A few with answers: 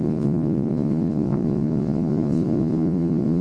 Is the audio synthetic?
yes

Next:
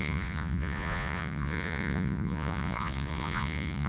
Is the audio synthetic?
yes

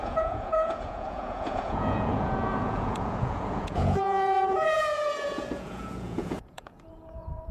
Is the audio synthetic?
yes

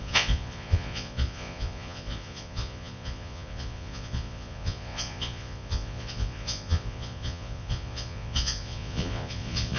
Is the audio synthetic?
yes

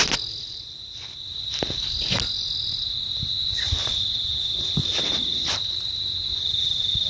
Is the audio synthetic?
no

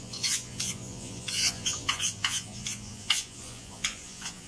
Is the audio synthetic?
yes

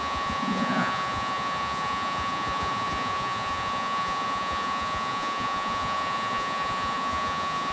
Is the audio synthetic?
yes